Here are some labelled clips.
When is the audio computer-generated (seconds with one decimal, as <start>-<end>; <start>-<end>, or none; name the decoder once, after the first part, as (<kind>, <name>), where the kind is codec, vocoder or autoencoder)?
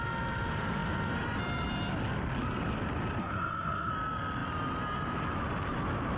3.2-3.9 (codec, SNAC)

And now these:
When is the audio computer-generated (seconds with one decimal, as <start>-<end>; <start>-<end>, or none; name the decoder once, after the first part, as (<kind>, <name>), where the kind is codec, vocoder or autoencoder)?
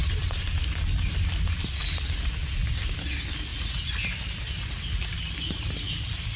none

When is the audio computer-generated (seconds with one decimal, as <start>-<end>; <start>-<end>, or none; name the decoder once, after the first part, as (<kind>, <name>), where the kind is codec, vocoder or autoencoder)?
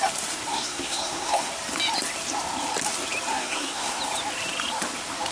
0.5-1.5 (codec, SNAC); 3.3-4.0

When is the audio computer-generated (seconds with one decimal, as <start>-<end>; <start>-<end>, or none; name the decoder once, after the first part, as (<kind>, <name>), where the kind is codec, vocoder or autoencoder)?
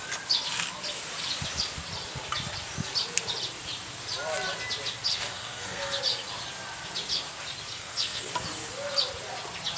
5.1-6.0 (codec, SNAC); 7.7-8.3